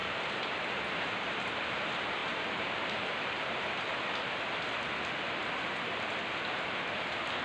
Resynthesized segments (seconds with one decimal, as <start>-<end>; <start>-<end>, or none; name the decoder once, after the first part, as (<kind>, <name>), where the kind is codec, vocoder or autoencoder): 0.0-1.7 (vocoder, BigVGAN v2); 2.2-3.1; 5.4-5.9